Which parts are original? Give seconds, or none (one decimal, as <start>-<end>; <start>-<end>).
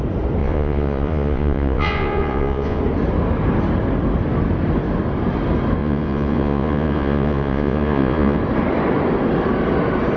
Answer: 0.0-0.4; 2.8-5.8; 8.4-10.2